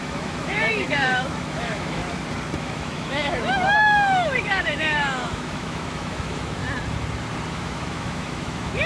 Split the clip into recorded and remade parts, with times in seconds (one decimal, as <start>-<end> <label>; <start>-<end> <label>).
0.0-2.0 remade; 2.0-2.6 recorded; 2.6-6.6 remade; 6.6-7.5 recorded; 7.5-8.9 remade